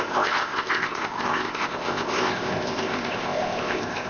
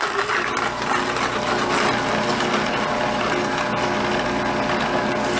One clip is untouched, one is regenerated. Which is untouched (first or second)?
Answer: second